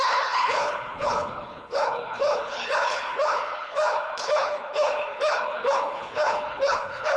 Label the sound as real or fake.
fake